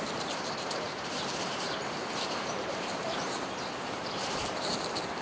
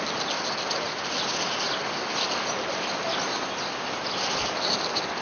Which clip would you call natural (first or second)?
second